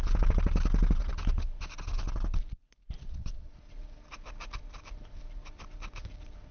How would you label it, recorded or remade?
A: recorded